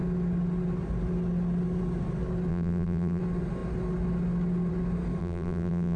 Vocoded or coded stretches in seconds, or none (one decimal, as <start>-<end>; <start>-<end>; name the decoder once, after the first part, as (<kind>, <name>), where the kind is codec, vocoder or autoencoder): 2.5-3.2 (vocoder, BigVGAN v2); 5.2-6.0

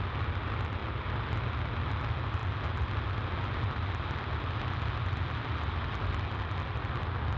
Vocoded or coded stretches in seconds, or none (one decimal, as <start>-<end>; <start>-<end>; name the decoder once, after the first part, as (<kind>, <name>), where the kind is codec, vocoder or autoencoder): none